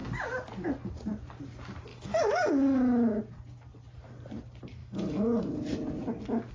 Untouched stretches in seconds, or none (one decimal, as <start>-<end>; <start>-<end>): 0.0-1.9; 3.2-4.8; 5.4-6.5